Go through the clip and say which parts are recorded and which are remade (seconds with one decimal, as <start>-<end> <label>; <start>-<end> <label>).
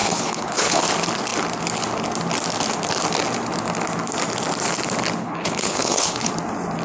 0.0-0.8 remade; 0.8-5.2 recorded; 5.2-6.3 remade; 6.3-6.8 recorded